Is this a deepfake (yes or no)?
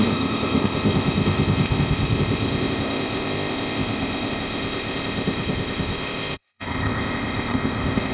yes